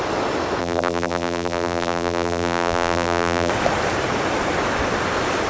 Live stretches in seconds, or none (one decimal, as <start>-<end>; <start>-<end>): 0.0-0.6; 3.5-5.5